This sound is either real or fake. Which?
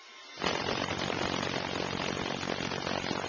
real